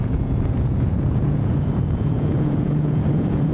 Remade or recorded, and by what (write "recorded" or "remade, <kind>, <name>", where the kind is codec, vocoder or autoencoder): remade, vocoder, Vocos